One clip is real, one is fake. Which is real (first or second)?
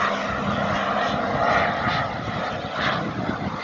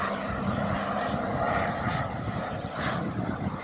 first